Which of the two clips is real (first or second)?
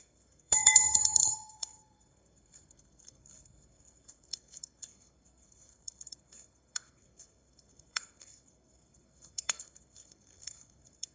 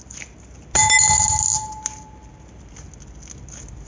second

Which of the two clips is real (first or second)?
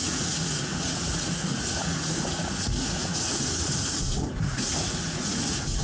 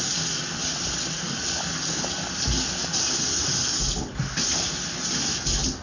second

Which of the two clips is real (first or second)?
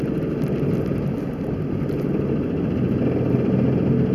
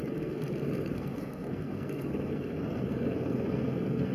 first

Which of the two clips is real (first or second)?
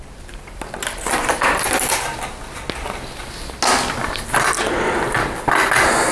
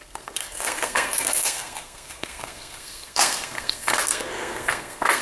first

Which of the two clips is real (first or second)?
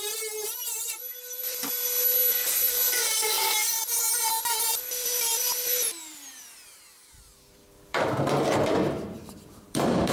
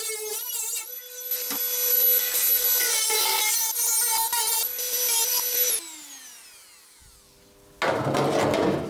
second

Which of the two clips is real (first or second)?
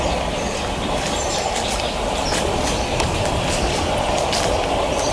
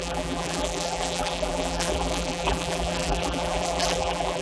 first